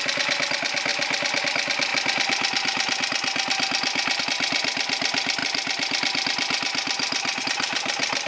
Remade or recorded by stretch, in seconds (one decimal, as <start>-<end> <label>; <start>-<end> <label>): 0.0-5.4 recorded; 5.4-7.4 remade; 7.4-8.3 recorded